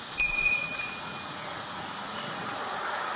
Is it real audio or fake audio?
fake